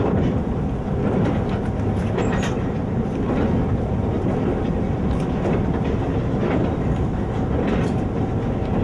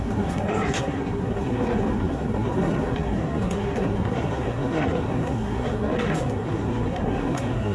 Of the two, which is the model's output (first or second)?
second